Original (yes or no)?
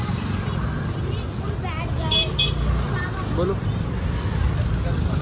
yes